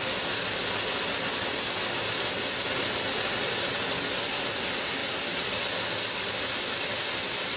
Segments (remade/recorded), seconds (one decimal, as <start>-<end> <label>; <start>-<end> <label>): 0.0-7.6 recorded